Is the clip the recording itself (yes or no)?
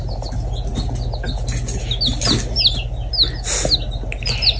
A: yes